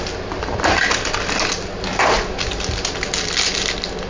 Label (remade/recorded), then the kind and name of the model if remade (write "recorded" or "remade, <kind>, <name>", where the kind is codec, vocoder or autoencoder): recorded